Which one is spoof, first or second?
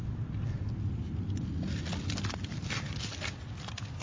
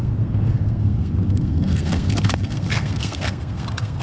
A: second